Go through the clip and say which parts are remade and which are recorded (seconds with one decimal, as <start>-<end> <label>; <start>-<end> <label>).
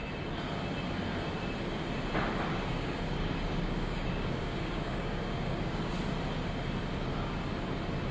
0.0-2.5 recorded; 2.5-5.8 remade; 5.8-8.1 recorded